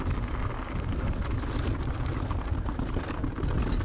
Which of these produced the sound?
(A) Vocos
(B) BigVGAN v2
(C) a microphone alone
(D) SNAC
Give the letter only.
C